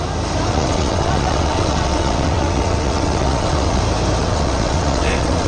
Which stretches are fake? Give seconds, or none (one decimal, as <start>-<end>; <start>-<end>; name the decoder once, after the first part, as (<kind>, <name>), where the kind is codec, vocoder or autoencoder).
0.5-3.8 (vocoder, WaveNeXt); 4.2-5.5